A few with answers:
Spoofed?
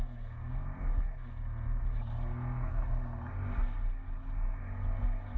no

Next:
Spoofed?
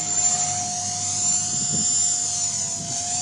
no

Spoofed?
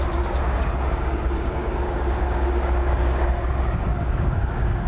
yes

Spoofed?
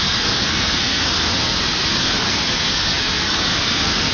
yes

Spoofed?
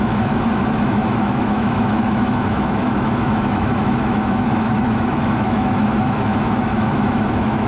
yes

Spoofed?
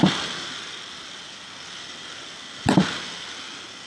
no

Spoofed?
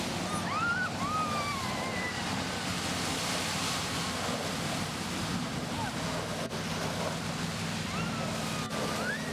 no